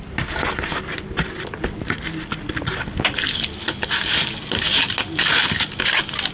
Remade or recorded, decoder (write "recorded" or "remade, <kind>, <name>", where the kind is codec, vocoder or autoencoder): recorded